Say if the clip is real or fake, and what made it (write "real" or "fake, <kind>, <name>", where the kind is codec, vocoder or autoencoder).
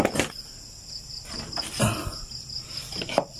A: real